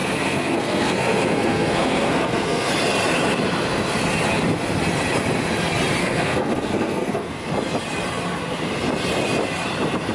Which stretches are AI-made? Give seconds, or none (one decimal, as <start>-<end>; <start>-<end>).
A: 0.0-2.7; 6.0-7.5